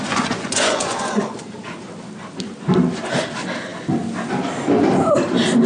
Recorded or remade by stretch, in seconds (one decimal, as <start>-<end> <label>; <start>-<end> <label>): 0.0-1.4 remade; 1.4-5.7 recorded